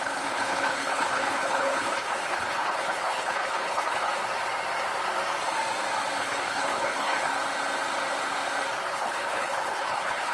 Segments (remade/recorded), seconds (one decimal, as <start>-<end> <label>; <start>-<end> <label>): 0.0-4.2 remade; 4.2-6.2 recorded; 6.2-7.3 remade; 7.3-8.9 recorded; 8.9-10.3 remade